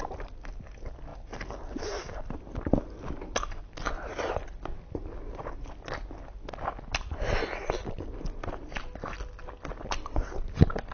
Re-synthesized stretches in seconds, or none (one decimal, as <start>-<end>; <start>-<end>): none